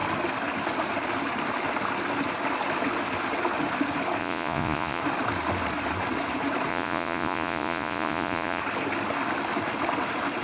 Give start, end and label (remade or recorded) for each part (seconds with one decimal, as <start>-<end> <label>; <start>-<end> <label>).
0.0-4.2 recorded; 4.2-5.0 remade; 5.0-6.7 recorded; 6.7-8.6 remade; 8.6-10.4 recorded